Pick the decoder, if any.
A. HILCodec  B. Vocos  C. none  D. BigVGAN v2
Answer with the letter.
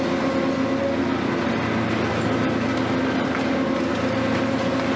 C